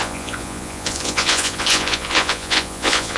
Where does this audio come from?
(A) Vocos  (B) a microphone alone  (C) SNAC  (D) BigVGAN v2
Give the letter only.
A